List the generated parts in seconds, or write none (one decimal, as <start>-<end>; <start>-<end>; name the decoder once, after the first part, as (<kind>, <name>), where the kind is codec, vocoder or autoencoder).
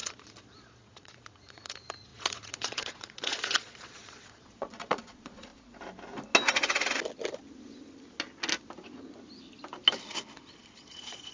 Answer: 0.0-5.5 (vocoder, Vocos); 10.6-11.3